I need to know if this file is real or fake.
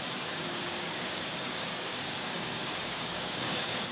fake